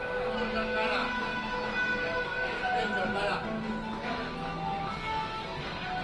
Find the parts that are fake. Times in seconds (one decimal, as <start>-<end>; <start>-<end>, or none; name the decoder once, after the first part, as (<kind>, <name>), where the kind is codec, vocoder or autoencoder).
none